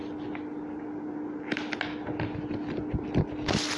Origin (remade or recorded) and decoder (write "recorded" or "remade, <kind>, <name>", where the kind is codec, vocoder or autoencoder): recorded